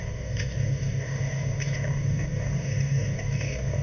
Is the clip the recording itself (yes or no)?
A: no